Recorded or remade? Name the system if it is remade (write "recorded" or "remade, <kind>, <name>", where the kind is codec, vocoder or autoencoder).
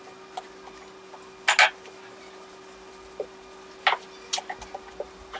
recorded